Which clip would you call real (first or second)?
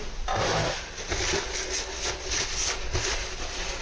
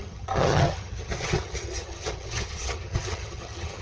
first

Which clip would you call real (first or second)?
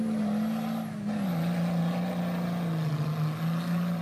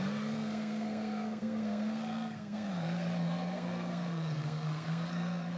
first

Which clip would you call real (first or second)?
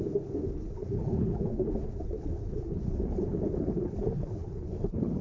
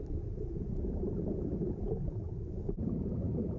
second